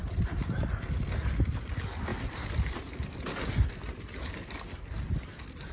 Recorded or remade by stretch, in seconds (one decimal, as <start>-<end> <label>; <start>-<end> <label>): 0.0-5.7 recorded